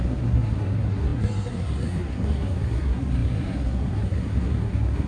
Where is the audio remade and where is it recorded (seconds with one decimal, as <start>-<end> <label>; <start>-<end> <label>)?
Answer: 0.0-5.1 remade